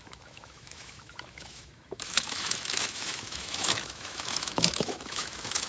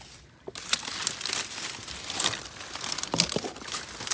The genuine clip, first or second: second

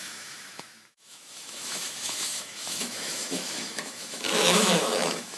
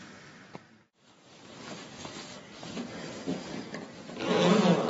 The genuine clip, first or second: second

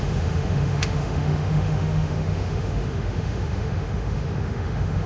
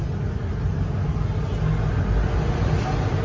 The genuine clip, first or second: second